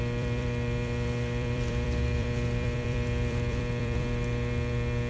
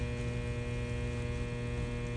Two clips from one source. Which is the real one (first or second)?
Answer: second